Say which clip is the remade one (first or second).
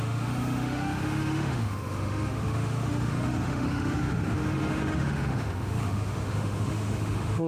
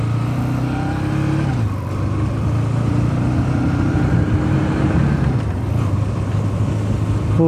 first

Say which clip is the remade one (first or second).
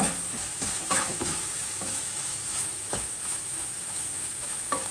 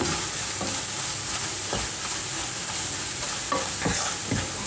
first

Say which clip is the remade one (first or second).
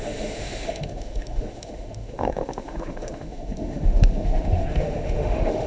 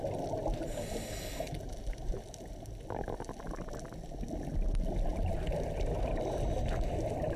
first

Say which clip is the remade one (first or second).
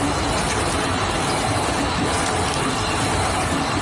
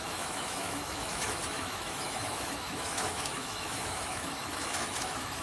second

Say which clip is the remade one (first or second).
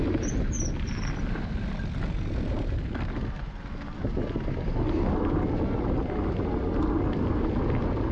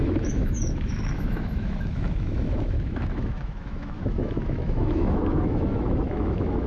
second